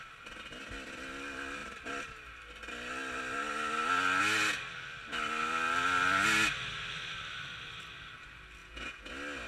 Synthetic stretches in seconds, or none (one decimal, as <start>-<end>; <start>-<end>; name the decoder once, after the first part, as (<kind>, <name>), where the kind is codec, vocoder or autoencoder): 8.6-9.1 (vocoder, Vocos)